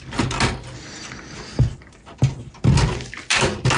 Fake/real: real